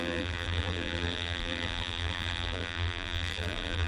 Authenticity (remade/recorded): remade